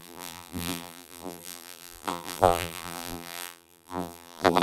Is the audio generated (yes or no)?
yes